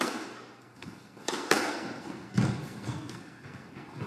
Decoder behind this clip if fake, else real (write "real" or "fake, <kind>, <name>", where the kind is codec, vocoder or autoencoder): fake, codec, SNAC